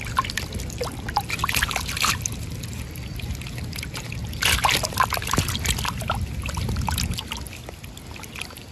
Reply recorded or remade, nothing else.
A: recorded